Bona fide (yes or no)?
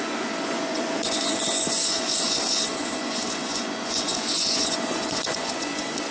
no